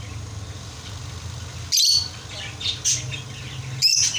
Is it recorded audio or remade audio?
recorded